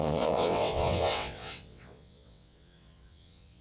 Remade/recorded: remade